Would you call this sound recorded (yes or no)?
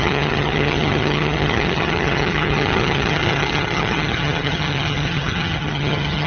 no